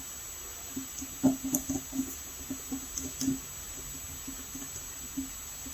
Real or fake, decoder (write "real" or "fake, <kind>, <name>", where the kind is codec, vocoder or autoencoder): real